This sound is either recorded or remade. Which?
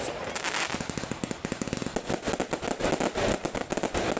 recorded